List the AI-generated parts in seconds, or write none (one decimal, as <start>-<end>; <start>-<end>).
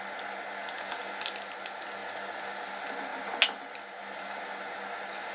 none